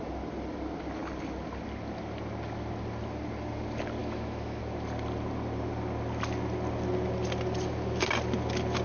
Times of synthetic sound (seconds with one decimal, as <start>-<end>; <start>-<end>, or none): 4.0-4.6

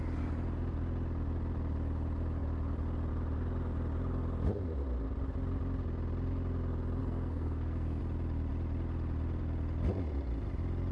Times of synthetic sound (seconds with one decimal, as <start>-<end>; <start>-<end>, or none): 7.0-8.0

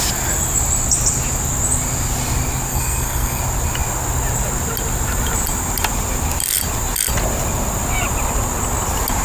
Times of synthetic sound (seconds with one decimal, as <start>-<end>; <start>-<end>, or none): 2.7-3.4

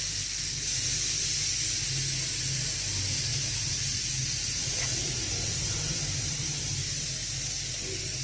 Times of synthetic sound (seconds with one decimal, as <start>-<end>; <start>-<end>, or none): 0.0-0.9; 2.4-6.8

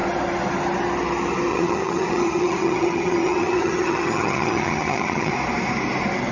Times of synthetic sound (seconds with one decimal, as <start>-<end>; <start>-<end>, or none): 1.5-5.3

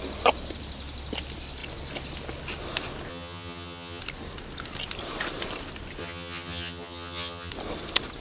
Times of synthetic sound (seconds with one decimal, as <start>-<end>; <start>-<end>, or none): 3.1-4.0; 6.0-7.5